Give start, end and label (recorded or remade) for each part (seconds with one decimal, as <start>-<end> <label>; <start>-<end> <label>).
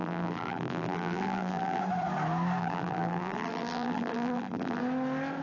0.0-1.8 remade; 1.8-2.6 recorded; 2.6-4.8 remade; 4.8-5.4 recorded